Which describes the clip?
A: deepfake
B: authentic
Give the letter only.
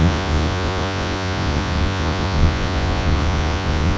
A